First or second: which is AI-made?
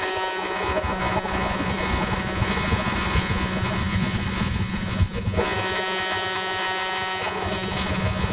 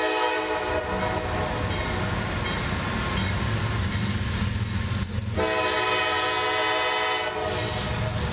first